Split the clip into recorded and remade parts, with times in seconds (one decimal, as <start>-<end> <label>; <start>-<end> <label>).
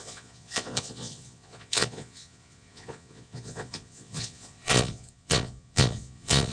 0.0-6.5 remade